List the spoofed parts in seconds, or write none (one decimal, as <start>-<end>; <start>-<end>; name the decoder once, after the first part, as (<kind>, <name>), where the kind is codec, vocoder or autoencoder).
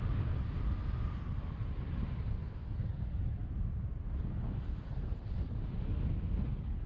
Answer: none